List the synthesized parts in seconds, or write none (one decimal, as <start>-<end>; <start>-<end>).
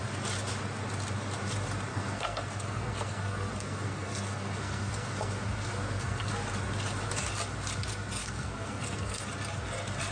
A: 1.9-6.3; 8.2-9.2